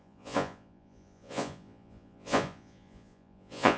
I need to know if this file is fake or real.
fake